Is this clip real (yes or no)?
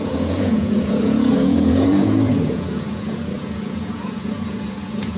no